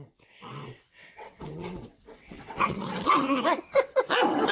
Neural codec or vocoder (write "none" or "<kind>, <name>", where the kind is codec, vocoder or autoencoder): vocoder, WaveNeXt